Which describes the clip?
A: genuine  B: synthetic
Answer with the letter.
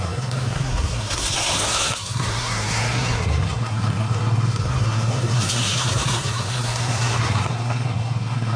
B